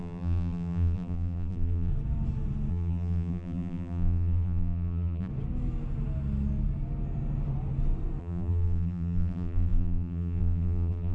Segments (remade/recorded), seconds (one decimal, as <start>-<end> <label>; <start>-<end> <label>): 0.0-1.9 remade; 1.9-2.7 recorded; 2.7-5.3 remade; 5.3-8.2 recorded; 8.2-11.1 remade